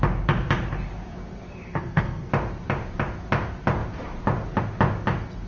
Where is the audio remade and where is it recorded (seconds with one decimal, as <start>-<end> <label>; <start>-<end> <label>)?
0.0-1.7 recorded; 1.7-2.3 remade; 2.3-5.5 recorded